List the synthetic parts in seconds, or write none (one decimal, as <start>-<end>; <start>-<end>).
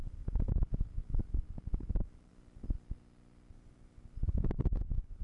0.0-2.3; 3.5-5.2